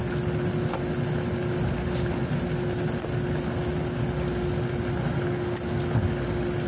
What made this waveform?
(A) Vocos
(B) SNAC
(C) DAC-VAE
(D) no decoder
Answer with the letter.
D